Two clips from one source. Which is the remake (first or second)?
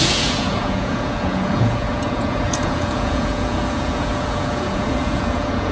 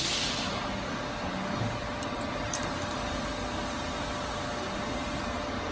first